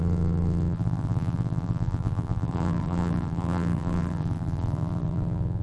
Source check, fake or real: fake